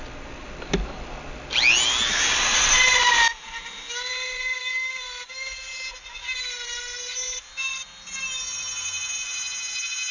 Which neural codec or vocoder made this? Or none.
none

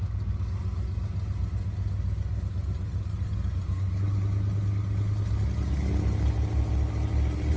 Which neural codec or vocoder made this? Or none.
none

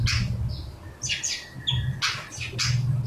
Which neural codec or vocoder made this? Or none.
none